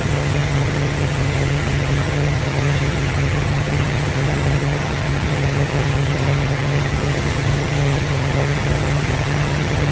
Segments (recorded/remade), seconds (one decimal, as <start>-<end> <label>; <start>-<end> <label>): 0.0-9.9 remade